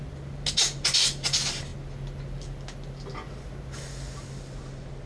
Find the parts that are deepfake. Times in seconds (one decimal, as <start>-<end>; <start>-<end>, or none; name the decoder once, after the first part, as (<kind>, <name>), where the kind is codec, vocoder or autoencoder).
none